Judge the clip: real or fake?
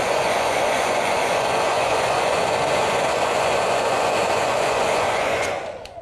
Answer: fake